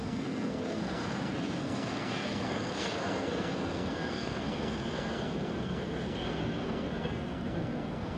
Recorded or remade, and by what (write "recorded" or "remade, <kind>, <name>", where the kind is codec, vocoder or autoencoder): remade, codec, SNAC